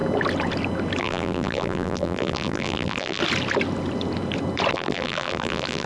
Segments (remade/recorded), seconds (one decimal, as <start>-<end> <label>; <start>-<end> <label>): 0.0-1.0 recorded; 1.0-3.2 remade; 3.2-4.7 recorded; 4.7-5.9 remade